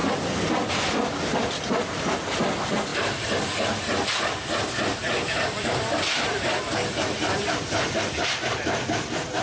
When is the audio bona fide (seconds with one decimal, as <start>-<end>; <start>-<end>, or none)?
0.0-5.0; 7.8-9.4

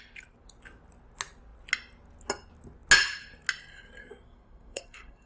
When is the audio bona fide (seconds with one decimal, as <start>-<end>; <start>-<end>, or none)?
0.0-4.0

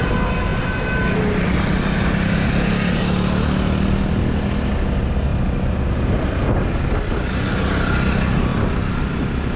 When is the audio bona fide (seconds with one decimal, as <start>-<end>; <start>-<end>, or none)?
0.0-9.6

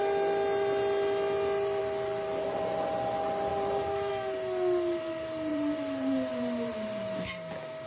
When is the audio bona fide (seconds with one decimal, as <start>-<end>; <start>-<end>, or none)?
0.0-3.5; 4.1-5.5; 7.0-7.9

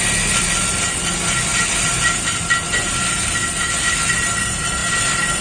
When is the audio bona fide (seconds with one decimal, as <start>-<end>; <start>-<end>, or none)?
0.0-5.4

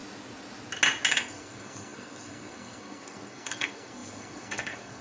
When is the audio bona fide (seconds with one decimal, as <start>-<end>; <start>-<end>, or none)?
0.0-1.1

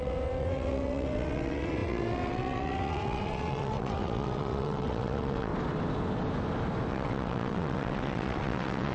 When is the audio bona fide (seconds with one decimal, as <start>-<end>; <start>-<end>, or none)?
5.5-6.9

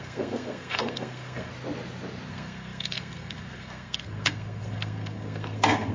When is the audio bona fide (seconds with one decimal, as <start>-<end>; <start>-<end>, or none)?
1.5-2.3